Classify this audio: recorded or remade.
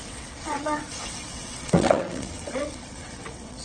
remade